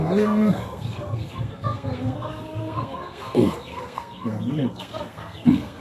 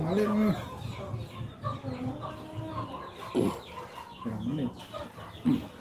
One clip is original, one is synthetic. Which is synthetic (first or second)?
first